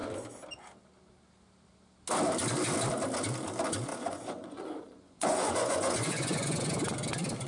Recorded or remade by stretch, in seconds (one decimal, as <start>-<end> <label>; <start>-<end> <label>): 0.0-3.9 recorded; 3.9-6.8 remade; 6.8-7.5 recorded